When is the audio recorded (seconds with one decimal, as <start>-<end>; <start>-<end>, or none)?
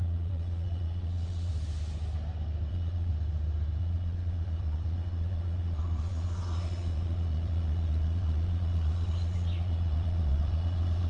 1.5-2.7; 3.1-3.8